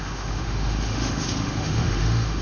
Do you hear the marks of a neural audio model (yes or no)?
yes